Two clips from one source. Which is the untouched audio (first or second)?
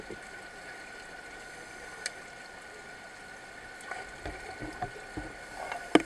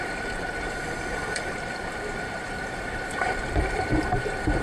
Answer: first